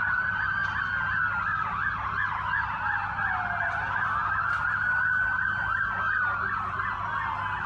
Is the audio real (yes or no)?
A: yes